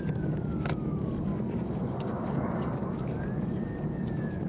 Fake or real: fake